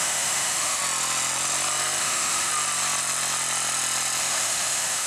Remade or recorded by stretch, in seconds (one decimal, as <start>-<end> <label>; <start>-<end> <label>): 0.0-0.8 remade; 0.8-2.0 recorded; 2.0-2.5 remade; 2.5-4.2 recorded; 4.2-5.1 remade